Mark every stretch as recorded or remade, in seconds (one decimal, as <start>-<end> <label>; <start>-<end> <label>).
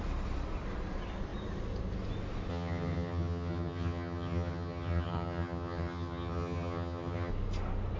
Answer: 0.0-2.5 recorded; 2.5-7.3 remade; 7.3-8.0 recorded